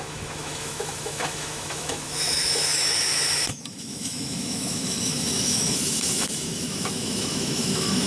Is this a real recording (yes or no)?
no